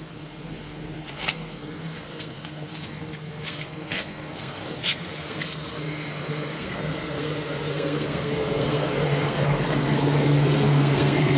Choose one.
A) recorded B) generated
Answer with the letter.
B